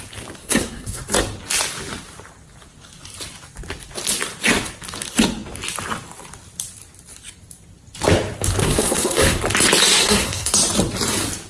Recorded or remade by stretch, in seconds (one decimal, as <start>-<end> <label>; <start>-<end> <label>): 0.0-0.4 recorded; 0.4-1.0 remade; 1.0-8.6 recorded; 8.6-9.4 remade; 9.4-10.0 recorded; 10.0-10.5 remade; 10.5-11.5 recorded